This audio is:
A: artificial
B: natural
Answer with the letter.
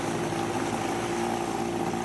B